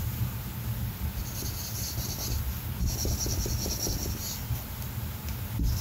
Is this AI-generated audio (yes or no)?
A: no